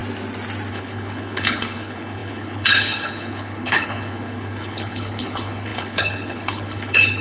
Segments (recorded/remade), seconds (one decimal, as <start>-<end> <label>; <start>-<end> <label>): 0.0-0.7 recorded; 0.7-7.2 remade